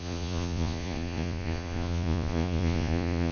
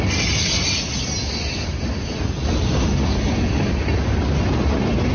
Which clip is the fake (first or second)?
first